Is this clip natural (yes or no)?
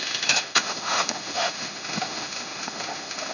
no